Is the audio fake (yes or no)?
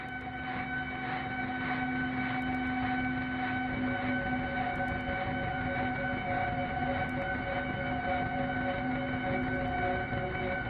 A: no